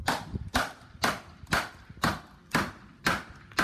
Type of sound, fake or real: real